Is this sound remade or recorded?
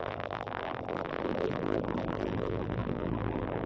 remade